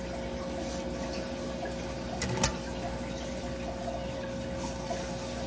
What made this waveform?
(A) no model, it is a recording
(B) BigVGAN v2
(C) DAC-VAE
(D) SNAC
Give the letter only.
A